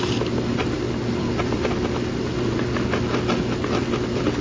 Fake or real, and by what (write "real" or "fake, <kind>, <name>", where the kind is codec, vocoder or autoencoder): real